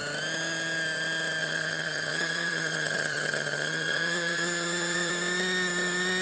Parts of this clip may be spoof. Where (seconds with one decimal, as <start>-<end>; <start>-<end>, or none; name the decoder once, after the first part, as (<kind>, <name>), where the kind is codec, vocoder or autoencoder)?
1.4-5.1 (vocoder, HiFi-GAN)